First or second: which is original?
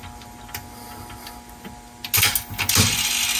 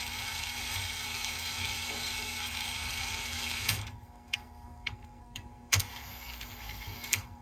first